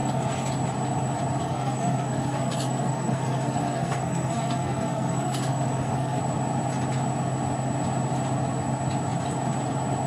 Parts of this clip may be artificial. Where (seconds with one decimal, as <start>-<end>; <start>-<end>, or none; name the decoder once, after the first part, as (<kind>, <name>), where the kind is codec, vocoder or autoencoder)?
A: 0.0-0.5 (codec, SNAC); 1.4-6.2